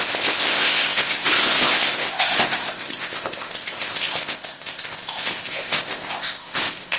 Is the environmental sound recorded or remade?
remade